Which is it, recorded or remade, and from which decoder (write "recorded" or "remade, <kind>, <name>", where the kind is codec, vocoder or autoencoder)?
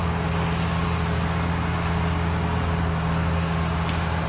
recorded